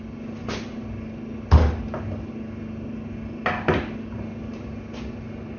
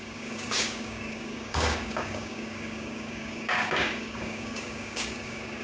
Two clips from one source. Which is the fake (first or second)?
second